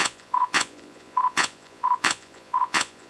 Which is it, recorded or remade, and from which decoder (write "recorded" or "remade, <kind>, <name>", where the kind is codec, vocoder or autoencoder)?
remade, vocoder, Vocos